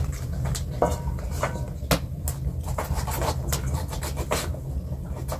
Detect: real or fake real